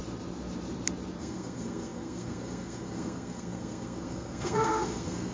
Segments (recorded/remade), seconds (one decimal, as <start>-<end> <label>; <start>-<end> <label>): 0.0-1.2 recorded; 1.2-5.3 remade